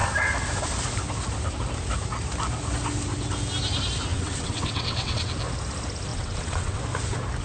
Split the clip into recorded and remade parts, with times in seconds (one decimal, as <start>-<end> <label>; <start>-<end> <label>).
0.0-4.1 recorded; 4.1-5.3 remade; 5.3-6.1 recorded; 6.1-6.8 remade; 6.8-7.4 recorded